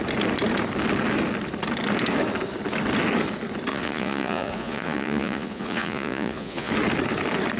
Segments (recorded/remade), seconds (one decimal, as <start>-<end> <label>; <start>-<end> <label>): 0.0-3.7 recorded; 3.7-6.7 remade; 6.7-7.6 recorded